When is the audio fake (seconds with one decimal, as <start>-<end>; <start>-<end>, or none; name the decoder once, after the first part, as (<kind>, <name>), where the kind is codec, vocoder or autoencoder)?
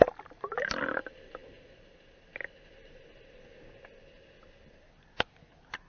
none